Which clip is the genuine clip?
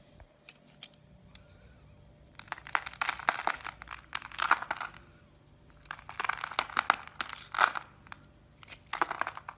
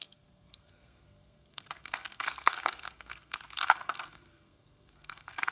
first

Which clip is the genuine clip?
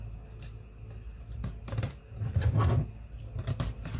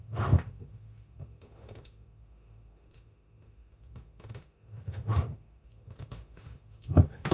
first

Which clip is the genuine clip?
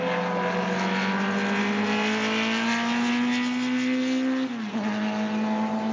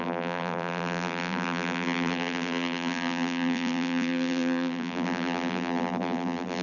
first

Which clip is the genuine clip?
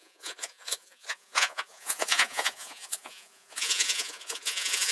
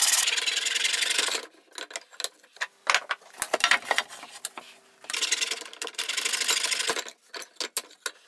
second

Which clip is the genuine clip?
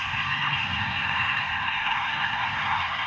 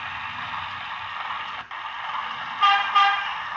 second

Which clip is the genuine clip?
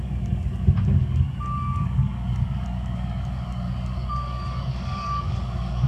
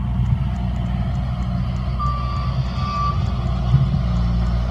second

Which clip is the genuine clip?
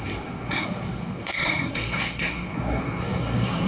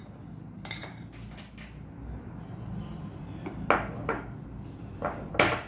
second